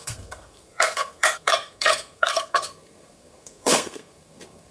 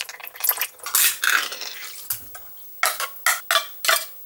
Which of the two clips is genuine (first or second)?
second